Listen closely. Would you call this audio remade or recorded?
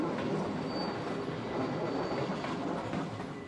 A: recorded